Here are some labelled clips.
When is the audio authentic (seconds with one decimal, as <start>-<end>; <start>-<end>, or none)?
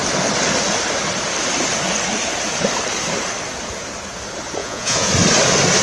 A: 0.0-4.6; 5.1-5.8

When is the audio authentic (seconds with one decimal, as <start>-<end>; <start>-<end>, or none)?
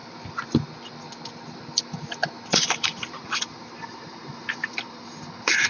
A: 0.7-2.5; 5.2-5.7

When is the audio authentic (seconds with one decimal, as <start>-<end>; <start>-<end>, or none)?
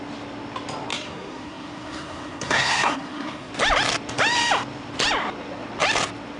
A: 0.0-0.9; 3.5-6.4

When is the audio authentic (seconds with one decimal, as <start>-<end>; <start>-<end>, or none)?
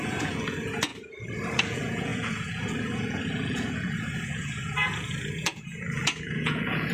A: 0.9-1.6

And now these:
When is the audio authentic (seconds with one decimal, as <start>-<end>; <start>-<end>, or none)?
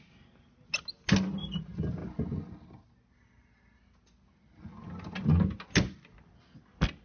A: 0.0-7.0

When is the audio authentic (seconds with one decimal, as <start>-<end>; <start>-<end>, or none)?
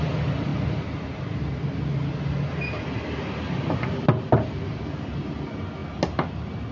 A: 0.0-6.7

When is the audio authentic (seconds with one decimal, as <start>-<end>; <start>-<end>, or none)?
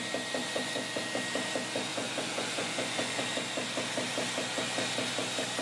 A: 0.0-0.4; 1.0-1.9; 3.2-5.6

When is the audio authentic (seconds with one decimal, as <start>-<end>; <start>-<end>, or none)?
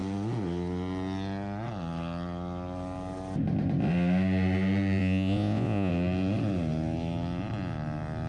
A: 0.0-5.0; 5.9-8.3